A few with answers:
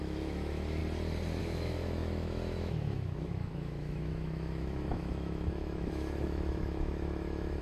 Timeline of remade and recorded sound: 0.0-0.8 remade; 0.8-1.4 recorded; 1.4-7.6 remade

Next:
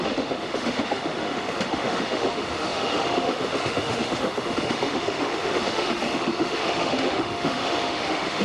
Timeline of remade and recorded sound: 0.0-8.4 remade

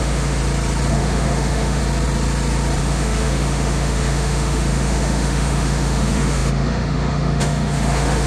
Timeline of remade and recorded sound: 0.0-0.4 remade; 0.4-0.9 recorded; 0.9-1.8 remade; 1.8-2.8 recorded; 2.8-8.3 remade

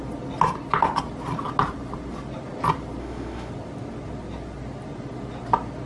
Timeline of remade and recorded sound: 0.0-3.0 recorded; 3.0-3.5 remade; 3.5-5.9 recorded

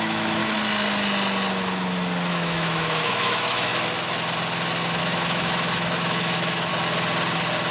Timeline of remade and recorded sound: 0.0-0.4 remade; 0.4-2.3 recorded; 2.3-3.7 remade; 3.7-5.0 recorded; 5.0-6.7 remade; 6.7-7.7 recorded

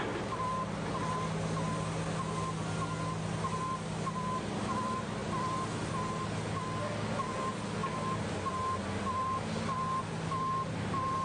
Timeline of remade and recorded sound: 0.0-11.2 recorded

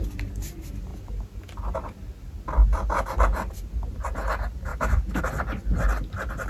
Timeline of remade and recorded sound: 0.0-4.7 recorded; 4.7-5.2 remade; 5.2-6.5 recorded

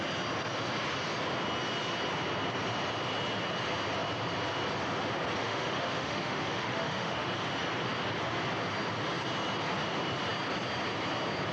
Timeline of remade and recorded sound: 0.0-5.4 recorded; 5.4-7.3 remade; 7.3-11.5 recorded